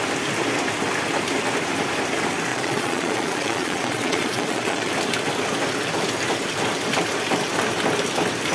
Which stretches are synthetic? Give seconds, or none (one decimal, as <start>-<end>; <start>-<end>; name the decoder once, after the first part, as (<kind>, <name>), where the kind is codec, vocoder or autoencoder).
2.5-4.9 (vocoder, Vocos)